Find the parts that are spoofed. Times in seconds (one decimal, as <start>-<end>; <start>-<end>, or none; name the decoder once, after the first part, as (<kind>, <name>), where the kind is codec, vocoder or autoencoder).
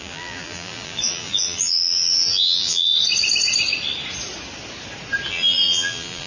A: 0.0-2.9 (vocoder, BigVGAN v2); 5.3-6.3